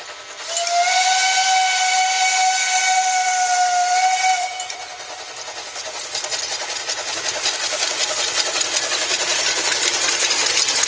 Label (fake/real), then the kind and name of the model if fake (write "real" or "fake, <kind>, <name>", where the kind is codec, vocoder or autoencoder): real